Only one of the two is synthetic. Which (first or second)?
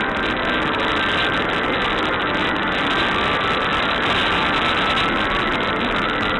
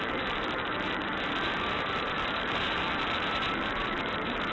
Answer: second